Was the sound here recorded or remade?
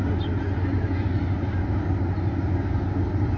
recorded